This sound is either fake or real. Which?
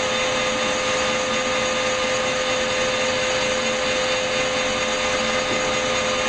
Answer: real